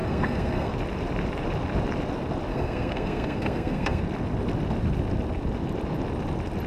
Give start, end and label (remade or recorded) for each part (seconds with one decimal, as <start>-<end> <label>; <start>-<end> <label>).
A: 0.0-0.7 remade; 0.7-2.5 recorded; 2.5-4.0 remade; 4.0-6.7 recorded